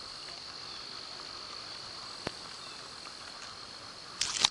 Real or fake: real